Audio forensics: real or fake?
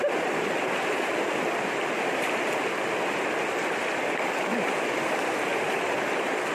real